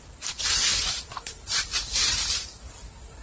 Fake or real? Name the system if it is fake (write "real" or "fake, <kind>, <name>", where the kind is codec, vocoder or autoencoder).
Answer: fake, vocoder, BigVGAN v2